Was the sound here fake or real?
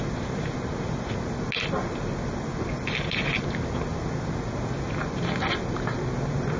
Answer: real